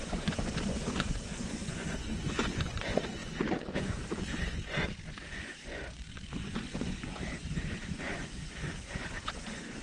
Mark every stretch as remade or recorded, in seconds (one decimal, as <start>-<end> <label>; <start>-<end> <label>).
0.0-9.8 remade